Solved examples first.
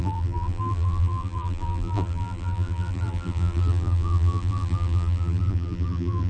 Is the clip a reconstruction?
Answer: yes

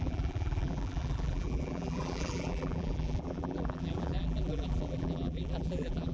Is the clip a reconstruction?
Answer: yes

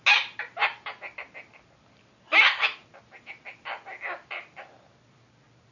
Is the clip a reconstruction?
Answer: no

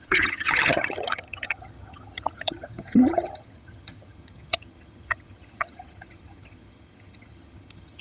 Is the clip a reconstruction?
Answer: yes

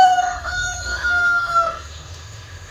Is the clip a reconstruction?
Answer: yes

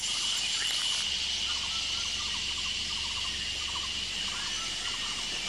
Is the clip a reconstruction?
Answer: no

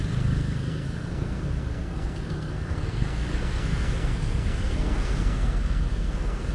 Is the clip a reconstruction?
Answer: yes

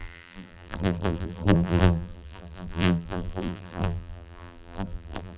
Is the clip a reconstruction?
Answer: yes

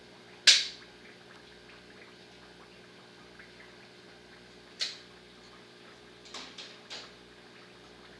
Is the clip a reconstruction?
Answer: no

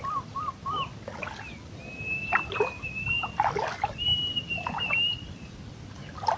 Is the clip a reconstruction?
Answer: no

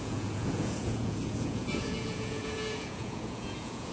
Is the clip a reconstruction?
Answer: yes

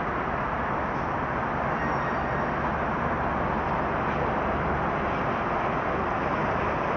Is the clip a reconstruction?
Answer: no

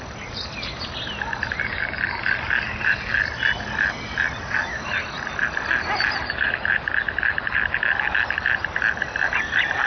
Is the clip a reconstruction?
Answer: no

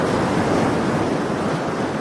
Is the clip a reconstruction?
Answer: no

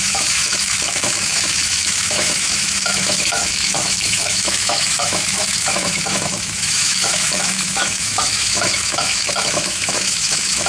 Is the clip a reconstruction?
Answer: yes